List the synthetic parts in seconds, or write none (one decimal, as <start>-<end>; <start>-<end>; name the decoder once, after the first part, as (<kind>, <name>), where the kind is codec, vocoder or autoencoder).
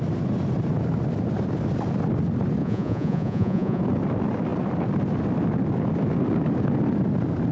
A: 2.6-3.8 (vocoder, Vocos)